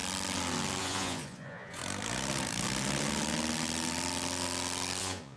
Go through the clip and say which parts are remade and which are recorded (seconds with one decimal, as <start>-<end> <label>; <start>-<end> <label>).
0.0-0.8 recorded; 0.8-1.8 remade; 1.8-5.0 recorded; 5.0-5.4 remade